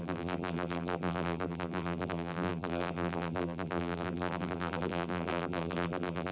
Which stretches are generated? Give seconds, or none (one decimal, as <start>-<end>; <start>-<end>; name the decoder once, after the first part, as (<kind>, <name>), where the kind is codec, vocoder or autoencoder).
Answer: 0.0-6.3 (vocoder, BigVGAN v2)